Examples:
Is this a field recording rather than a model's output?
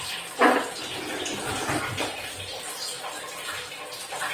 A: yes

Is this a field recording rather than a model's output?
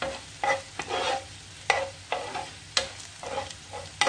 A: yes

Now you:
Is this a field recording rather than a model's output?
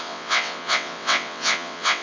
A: no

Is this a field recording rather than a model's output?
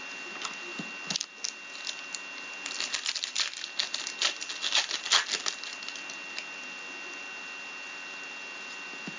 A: yes